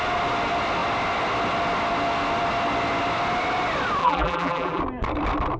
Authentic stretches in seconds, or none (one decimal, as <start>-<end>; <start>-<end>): 0.0-4.0; 4.8-5.6